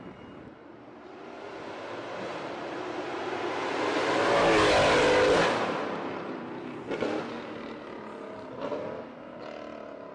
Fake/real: real